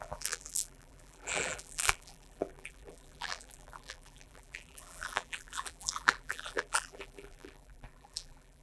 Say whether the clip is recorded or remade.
remade